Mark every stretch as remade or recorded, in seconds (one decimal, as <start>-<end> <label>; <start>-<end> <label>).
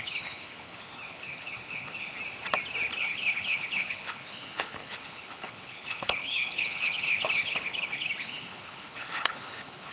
0.0-2.2 remade; 2.2-3.0 recorded; 3.0-9.9 remade